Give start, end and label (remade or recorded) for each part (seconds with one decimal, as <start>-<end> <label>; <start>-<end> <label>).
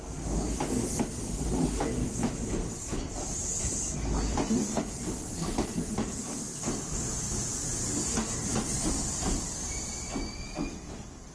0.0-11.3 recorded